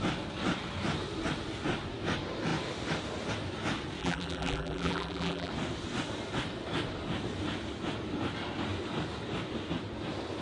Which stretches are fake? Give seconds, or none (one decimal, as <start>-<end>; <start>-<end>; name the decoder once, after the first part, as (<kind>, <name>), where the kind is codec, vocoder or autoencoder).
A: 4.0-5.5 (vocoder, BigVGAN v2)